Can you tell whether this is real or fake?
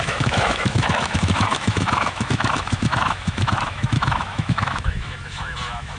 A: fake